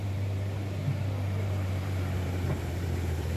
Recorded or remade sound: remade